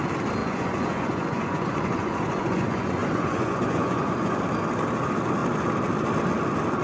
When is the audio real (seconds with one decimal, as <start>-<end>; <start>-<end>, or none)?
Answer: 0.0-0.4; 4.4-6.8